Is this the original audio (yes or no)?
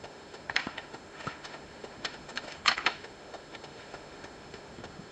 no